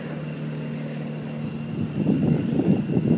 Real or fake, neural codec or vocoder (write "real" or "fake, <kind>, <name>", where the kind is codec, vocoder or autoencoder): real